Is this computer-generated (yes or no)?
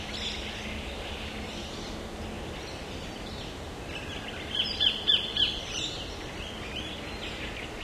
no